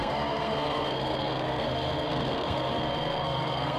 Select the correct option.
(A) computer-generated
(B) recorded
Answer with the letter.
A